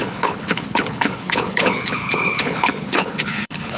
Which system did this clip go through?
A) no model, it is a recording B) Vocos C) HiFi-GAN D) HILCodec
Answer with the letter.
D